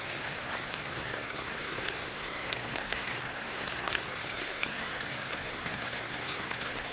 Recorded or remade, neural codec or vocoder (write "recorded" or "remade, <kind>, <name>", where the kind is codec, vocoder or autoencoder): remade, codec, SNAC